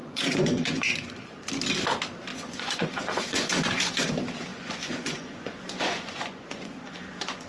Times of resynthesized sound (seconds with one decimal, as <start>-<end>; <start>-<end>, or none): 0.0-1.5; 2.3-4.1; 4.5-7.5